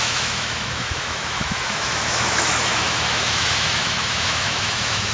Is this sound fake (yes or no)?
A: yes